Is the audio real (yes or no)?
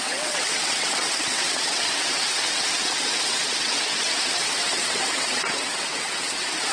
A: no